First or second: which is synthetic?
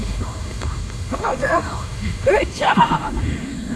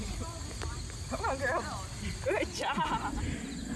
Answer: first